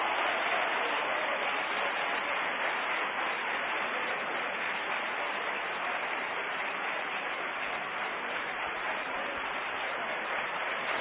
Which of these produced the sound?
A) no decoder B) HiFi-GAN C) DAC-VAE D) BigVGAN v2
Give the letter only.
D